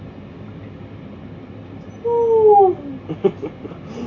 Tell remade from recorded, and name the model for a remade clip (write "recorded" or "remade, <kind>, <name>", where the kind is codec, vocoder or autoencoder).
recorded